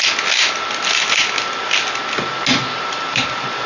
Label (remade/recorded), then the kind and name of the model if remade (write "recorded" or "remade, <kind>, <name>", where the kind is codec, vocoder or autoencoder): recorded